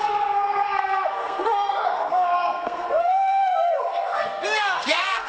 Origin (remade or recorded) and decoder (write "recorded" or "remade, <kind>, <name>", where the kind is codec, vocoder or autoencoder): remade, codec, SNAC